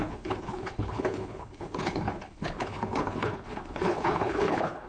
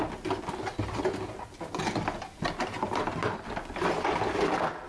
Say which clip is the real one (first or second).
second